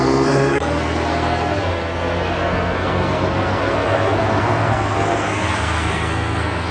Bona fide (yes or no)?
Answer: no